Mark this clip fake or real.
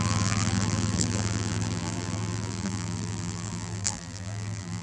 fake